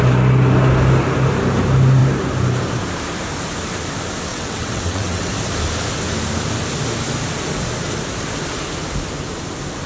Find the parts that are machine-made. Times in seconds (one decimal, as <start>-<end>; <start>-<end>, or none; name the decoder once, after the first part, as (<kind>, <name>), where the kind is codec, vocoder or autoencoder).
4.3-5.3 (vocoder, WaveNeXt)

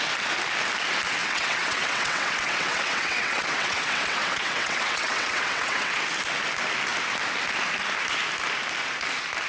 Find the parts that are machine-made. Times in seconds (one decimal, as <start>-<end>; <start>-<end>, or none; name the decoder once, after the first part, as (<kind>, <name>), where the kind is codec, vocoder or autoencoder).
1.2-6.0 (vocoder, WaveNeXt)

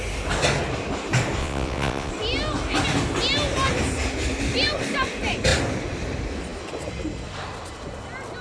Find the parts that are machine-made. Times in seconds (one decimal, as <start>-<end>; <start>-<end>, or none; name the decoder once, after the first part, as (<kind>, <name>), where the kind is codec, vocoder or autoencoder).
1.4-2.1 (vocoder, WaveNeXt)

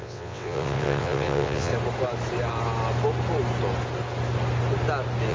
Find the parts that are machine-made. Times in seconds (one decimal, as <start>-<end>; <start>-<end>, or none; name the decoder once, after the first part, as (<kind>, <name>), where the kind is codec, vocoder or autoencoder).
0.0-1.7 (vocoder, WaveNeXt)